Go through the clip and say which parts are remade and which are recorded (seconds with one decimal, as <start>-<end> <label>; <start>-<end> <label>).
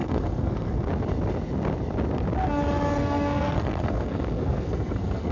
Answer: 0.0-0.9 remade; 0.9-3.0 recorded; 3.0-5.3 remade